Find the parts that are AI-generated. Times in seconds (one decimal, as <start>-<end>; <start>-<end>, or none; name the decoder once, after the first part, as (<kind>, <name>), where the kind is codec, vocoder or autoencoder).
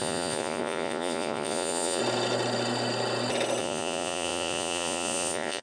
0.0-2.0 (vocoder, Vocos); 3.6-5.6